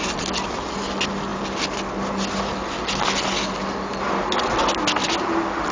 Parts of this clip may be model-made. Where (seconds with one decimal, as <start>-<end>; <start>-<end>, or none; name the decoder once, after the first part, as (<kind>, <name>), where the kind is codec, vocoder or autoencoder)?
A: none